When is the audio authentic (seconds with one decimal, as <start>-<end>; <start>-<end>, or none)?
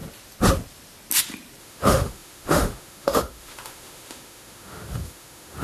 0.0-1.6